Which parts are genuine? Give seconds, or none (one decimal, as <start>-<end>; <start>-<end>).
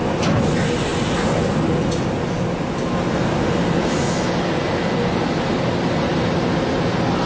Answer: 0.0-7.3